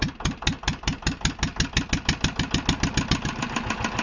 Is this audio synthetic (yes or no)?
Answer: no